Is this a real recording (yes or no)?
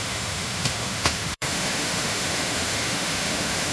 no